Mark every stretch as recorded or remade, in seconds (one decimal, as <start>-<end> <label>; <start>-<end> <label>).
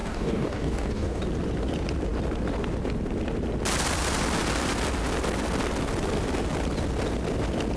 0.0-1.2 remade; 1.2-7.8 recorded